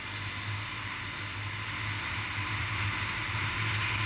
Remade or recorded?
recorded